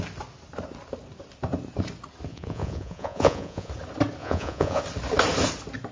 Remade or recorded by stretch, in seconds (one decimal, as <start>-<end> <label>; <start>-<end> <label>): 0.0-2.3 recorded; 2.3-3.7 remade; 3.7-4.2 recorded; 4.2-4.8 remade; 4.8-5.9 recorded